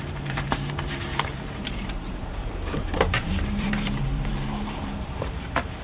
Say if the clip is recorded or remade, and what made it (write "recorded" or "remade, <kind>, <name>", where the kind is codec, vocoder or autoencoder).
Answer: remade, vocoder, BigVGAN v2